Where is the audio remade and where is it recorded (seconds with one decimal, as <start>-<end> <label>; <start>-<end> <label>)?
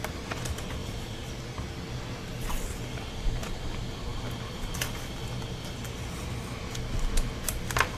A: 0.0-0.8 recorded; 0.8-1.4 remade; 1.4-8.0 recorded